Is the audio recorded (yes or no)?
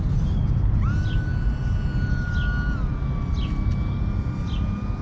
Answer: yes